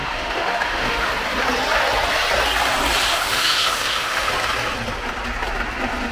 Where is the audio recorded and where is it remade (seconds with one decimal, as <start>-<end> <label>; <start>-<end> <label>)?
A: 0.0-1.1 remade; 1.1-3.1 recorded; 3.1-4.3 remade; 4.3-6.1 recorded